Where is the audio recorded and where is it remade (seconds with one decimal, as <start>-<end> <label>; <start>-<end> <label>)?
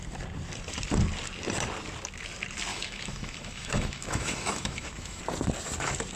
0.0-2.7 recorded; 2.7-5.2 remade; 5.2-6.2 recorded